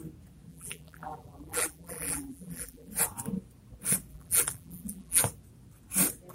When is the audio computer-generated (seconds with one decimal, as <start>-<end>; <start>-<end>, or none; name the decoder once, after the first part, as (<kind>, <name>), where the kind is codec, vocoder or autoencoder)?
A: 0.5-2.9 (vocoder, BigVGAN v2); 4.1-5.2